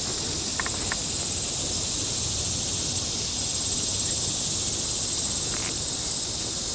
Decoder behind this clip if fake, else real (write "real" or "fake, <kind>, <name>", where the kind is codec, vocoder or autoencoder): real